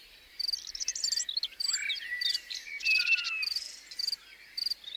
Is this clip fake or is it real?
fake